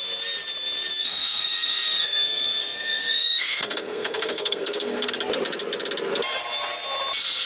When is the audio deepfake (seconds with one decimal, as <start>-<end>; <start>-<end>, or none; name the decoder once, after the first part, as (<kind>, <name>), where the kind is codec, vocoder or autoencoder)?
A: 1.0-5.1 (codec, SNAC)